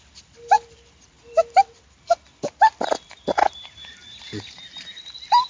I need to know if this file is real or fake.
fake